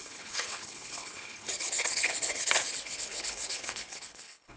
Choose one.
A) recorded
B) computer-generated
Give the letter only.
B